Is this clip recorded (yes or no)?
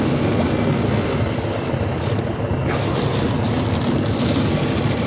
yes